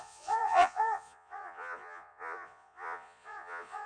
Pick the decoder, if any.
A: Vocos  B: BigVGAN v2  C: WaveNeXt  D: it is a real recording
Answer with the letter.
A